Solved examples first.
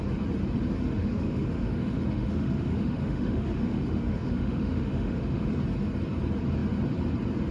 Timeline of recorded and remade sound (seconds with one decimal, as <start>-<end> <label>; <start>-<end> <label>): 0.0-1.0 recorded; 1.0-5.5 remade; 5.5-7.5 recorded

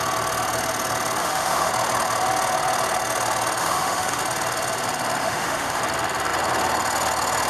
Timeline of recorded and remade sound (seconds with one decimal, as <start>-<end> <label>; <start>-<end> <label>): 0.0-1.2 recorded; 1.2-1.7 remade; 1.7-3.6 recorded; 3.6-4.2 remade; 4.2-5.2 recorded; 5.2-5.8 remade; 5.8-7.5 recorded

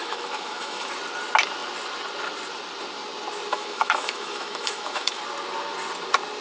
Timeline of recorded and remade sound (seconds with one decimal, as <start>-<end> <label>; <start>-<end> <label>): 0.0-0.9 remade; 0.9-3.5 recorded; 3.5-5.2 remade; 5.2-6.4 recorded

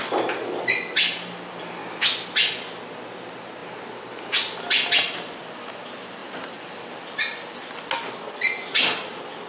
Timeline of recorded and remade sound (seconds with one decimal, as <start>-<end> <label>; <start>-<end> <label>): 0.0-9.5 recorded

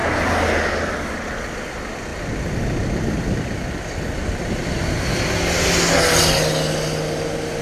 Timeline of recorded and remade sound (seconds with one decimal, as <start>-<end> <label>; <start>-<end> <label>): 0.0-7.6 recorded

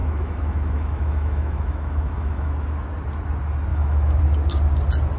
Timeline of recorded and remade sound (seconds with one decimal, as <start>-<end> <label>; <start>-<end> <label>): 0.0-2.5 remade; 2.5-3.7 recorded; 3.7-4.2 remade; 4.2-5.2 recorded